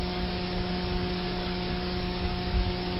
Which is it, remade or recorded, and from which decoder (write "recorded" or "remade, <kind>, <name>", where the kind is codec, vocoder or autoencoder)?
remade, codec, DAC